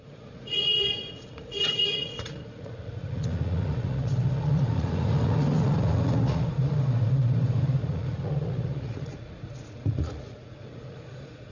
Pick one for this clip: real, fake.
fake